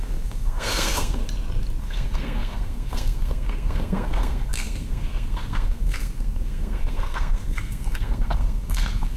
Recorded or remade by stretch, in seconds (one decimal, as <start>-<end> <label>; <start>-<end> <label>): 0.0-1.2 remade; 1.2-1.8 recorded; 1.8-9.2 remade